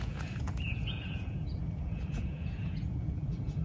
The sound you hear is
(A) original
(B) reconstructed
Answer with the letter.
B